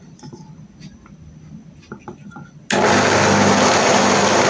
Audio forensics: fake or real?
real